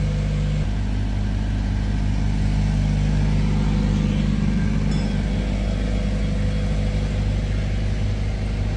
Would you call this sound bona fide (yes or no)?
yes